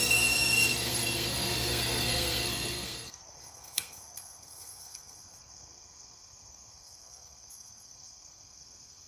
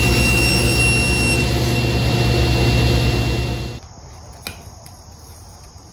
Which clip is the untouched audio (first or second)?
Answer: second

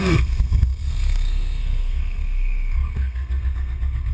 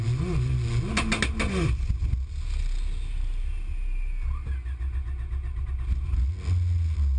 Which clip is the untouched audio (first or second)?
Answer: second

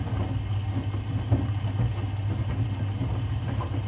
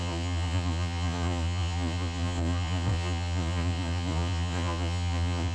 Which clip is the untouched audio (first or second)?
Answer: first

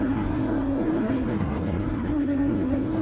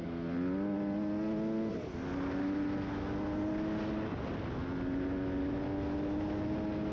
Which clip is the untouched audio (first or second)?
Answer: second